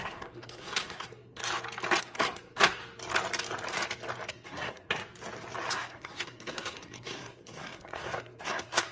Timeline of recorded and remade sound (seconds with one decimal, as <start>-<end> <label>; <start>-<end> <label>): 0.0-1.4 remade; 1.4-2.0 recorded; 2.0-2.8 remade; 2.8-4.3 recorded; 4.3-5.0 remade; 5.0-5.7 recorded; 5.7-8.9 remade